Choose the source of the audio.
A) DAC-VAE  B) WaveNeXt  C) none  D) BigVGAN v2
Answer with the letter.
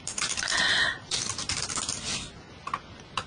C